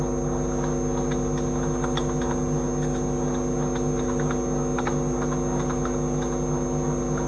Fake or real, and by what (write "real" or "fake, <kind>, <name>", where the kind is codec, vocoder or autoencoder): real